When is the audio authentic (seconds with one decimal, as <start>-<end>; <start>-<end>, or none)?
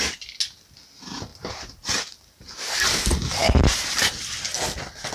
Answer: 0.0-1.3; 4.4-5.1